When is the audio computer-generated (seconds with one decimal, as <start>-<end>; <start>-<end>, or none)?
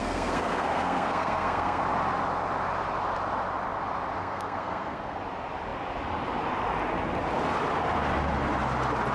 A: 0.0-1.8; 4.2-5.2